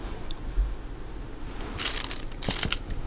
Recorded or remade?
recorded